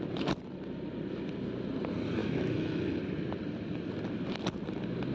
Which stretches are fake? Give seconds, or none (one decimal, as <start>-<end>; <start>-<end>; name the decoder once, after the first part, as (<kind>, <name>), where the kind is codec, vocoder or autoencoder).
2.2-3.0 (autoencoder, DAC-VAE)